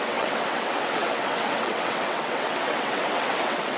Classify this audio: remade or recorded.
remade